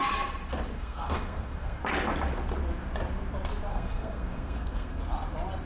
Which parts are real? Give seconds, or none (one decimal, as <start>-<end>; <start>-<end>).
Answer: 0.0-0.7; 1.8-3.7; 5.0-5.7